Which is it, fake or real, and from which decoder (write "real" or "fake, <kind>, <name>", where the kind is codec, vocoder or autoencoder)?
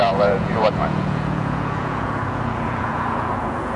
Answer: fake, vocoder, Vocos